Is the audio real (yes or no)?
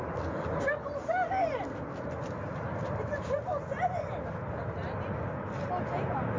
yes